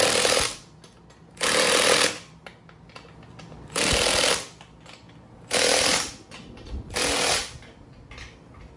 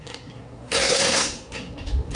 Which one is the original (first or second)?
first